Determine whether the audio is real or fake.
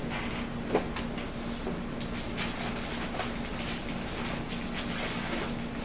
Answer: real